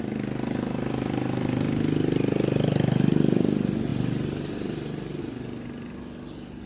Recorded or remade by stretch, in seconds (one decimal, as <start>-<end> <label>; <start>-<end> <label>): 0.0-6.7 recorded